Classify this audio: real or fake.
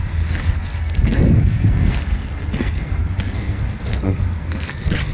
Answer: fake